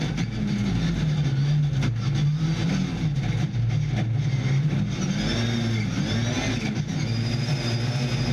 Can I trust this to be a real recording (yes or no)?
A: yes